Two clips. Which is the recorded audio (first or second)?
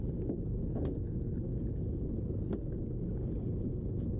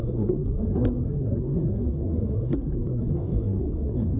first